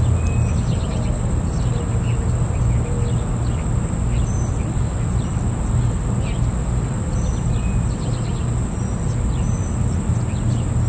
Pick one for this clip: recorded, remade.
recorded